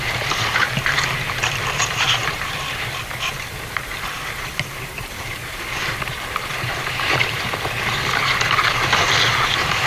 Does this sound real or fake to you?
fake